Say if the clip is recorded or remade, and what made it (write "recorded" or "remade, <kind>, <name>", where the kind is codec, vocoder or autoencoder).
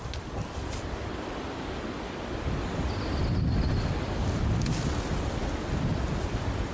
remade, vocoder, BigVGAN v2